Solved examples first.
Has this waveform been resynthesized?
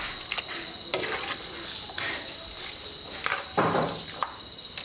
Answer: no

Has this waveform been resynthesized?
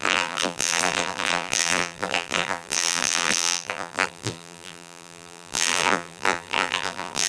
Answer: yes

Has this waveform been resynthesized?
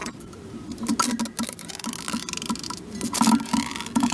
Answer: no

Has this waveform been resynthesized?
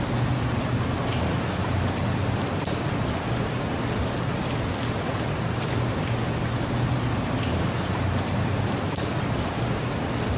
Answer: no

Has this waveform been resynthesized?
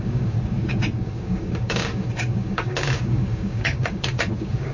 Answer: yes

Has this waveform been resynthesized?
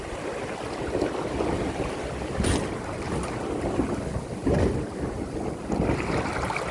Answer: no